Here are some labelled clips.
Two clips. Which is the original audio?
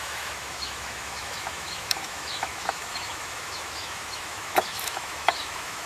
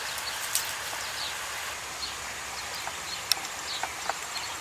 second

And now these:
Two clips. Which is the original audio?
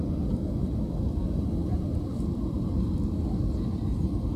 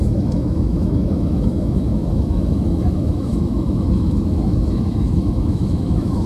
first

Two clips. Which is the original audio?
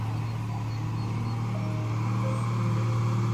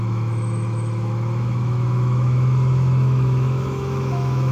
first